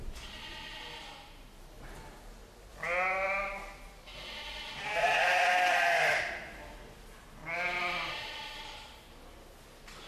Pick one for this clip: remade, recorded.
recorded